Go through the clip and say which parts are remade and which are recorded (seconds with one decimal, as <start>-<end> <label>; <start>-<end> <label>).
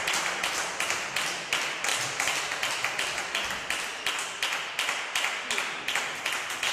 0.0-6.7 recorded